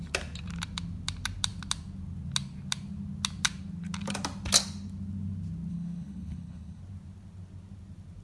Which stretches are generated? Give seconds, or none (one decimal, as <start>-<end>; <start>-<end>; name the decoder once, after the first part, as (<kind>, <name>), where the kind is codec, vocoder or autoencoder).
5.7-6.8 (codec, HILCodec)